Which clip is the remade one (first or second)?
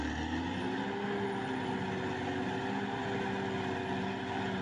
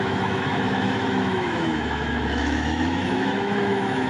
second